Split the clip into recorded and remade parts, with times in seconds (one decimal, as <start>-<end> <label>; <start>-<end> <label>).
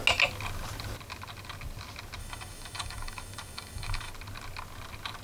0.0-2.2 recorded; 2.2-4.1 remade; 4.1-5.2 recorded